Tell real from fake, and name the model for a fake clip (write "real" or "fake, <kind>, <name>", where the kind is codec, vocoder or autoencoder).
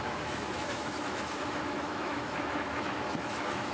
fake, autoencoder, DAC-VAE